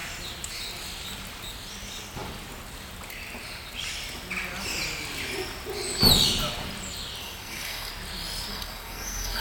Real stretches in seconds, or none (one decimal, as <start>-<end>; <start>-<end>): 0.0-7.2; 7.9-8.5